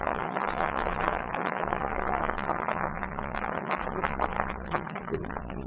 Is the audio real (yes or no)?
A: no